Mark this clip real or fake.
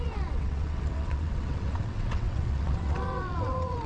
fake